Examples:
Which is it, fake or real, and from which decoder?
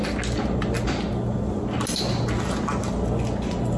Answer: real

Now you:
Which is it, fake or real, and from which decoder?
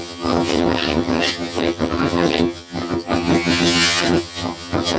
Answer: fake, vocoder, HiFi-GAN